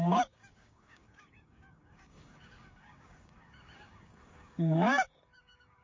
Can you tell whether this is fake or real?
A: fake